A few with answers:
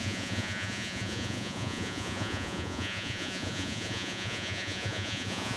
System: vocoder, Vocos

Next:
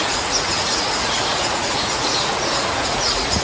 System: vocoder, Vocos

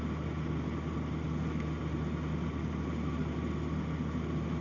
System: none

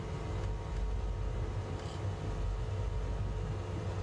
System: none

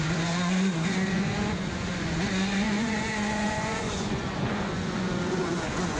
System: vocoder, Vocos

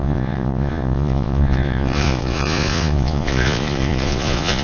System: vocoder, Vocos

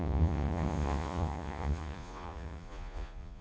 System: vocoder, Vocos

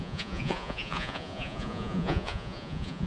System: vocoder, Vocos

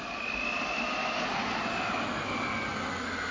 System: none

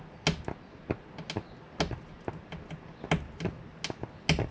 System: none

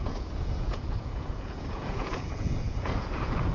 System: vocoder, Vocos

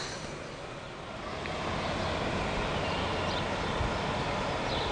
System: none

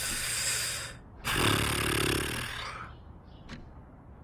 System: none